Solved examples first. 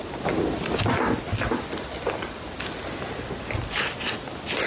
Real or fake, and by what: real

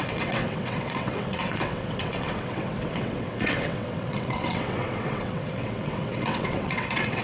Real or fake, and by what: fake, vocoder, WaveNeXt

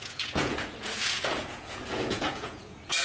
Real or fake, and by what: fake, vocoder, Vocos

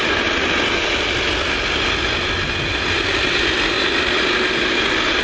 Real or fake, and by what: real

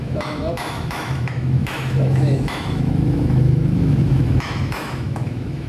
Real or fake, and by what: fake, autoencoder, DAC-VAE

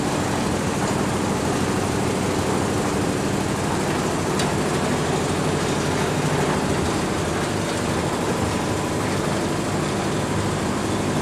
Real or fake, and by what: real